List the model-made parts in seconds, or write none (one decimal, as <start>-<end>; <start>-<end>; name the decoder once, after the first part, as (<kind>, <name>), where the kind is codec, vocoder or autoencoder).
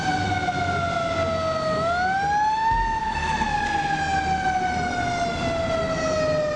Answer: 3.0-3.6 (codec, SNAC)